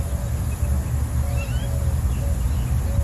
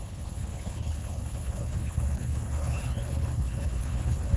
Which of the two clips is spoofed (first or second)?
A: second